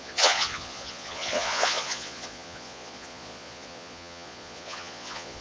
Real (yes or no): no